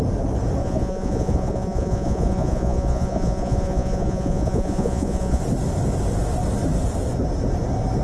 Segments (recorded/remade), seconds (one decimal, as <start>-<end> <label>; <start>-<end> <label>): 0.0-0.6 recorded; 0.6-5.4 remade; 5.4-8.0 recorded